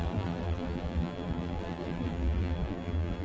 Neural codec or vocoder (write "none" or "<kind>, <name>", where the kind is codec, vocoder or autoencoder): vocoder, BigVGAN v2